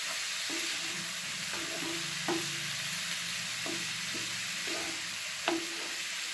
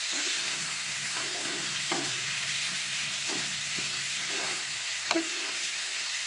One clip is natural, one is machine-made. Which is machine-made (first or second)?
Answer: second